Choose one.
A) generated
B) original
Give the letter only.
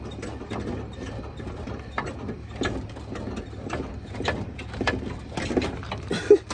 B